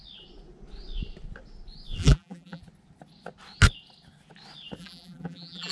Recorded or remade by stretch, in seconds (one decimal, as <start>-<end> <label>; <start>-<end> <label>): 0.0-2.0 recorded; 2.0-2.6 remade; 2.6-4.8 recorded; 4.8-5.7 remade